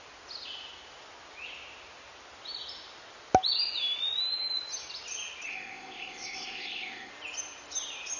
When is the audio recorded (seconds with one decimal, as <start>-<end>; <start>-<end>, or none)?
0.0-5.5; 7.1-8.2